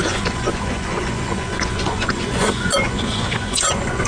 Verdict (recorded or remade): remade